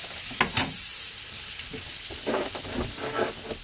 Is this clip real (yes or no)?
yes